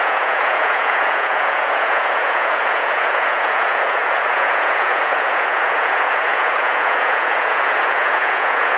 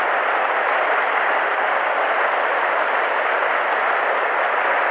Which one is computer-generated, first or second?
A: first